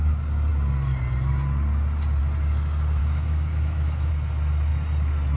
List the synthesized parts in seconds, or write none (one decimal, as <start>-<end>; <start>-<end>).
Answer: 3.0-4.1